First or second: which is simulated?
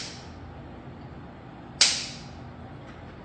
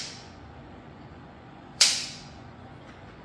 second